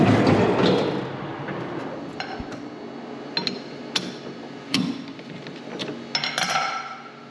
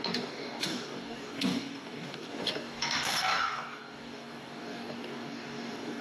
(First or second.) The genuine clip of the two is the first